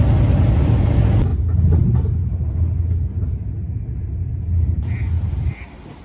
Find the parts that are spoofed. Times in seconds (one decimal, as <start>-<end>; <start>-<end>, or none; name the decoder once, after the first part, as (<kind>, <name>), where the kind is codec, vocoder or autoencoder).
none